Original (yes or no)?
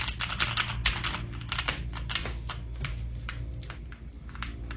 yes